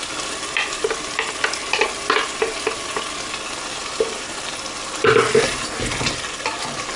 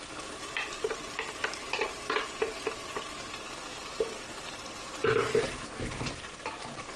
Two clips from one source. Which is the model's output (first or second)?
second